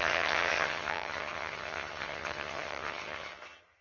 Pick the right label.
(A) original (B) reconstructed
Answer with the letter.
B